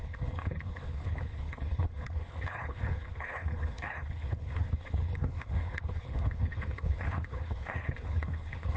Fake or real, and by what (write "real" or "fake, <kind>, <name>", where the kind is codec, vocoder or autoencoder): fake, codec, HILCodec